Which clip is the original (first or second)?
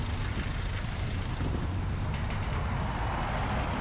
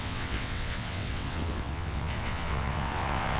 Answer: first